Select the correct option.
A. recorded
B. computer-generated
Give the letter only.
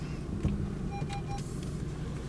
A